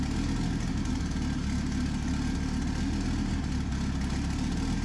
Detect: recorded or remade recorded